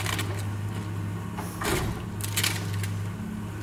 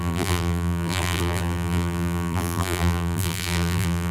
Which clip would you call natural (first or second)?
first